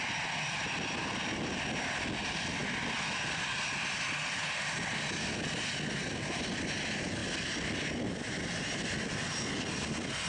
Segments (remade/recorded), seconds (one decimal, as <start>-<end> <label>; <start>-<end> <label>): 0.0-10.3 recorded